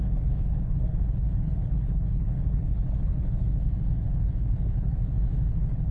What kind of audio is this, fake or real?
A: fake